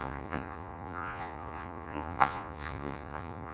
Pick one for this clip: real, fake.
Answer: fake